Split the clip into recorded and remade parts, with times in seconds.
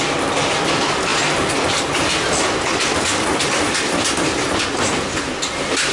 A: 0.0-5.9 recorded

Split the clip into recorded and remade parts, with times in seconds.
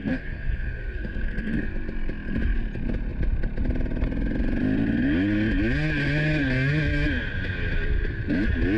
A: 0.0-1.6 remade; 1.6-8.8 recorded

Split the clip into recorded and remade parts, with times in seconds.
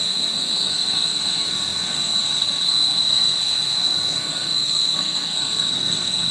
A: 0.0-6.3 remade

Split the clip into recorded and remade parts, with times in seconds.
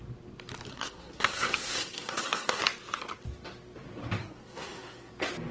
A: 0.0-0.7 recorded; 0.7-2.6 remade; 2.6-4.2 recorded; 4.2-5.1 remade; 5.1-5.5 recorded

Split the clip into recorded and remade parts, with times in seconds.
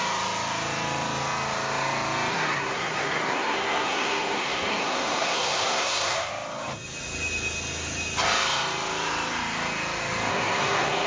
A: 0.0-2.3 recorded; 2.3-6.3 remade; 6.3-10.3 recorded; 10.3-11.1 remade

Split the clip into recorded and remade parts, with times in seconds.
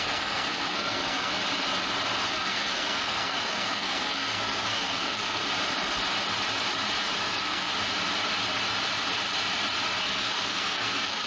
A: 0.0-1.4 remade; 1.4-2.3 recorded; 2.3-5.4 remade; 5.4-7.2 recorded; 7.2-7.7 remade; 7.7-10.0 recorded; 10.0-11.3 remade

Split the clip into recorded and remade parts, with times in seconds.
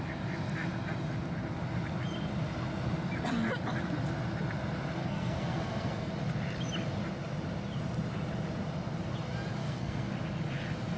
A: 0.0-5.0 recorded; 5.0-6.1 remade; 6.1-9.6 recorded; 9.6-10.1 remade; 10.1-11.0 recorded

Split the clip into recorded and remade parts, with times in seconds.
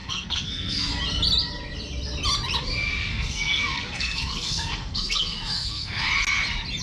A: 0.0-0.9 remade; 0.9-3.1 recorded; 3.1-6.0 remade; 6.0-6.8 recorded